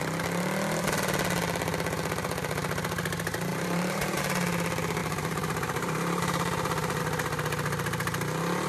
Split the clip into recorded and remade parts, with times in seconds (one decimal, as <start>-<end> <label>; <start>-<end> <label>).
0.0-3.5 recorded; 3.5-4.2 remade; 4.2-5.0 recorded; 5.0-7.0 remade; 7.0-8.7 recorded

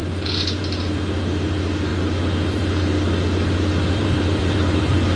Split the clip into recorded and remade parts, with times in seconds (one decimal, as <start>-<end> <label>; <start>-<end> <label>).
0.0-0.6 remade; 0.6-1.9 recorded; 1.9-5.2 remade

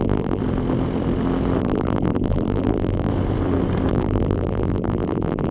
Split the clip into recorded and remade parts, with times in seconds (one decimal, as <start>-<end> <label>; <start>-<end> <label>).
0.0-0.4 remade; 0.4-1.6 recorded; 1.6-3.1 remade; 3.1-3.9 recorded; 3.9-5.5 remade

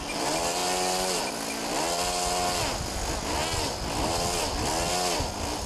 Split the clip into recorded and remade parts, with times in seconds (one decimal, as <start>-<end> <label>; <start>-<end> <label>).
0.0-5.7 recorded

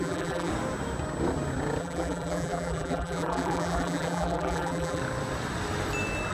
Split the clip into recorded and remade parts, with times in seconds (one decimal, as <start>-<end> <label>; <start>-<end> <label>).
0.0-0.5 remade; 0.5-1.8 recorded; 1.8-5.0 remade; 5.0-6.3 recorded

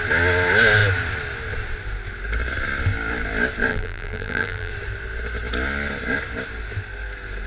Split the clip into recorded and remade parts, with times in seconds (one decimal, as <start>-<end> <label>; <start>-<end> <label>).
0.0-3.7 recorded; 3.7-4.7 remade; 4.7-7.5 recorded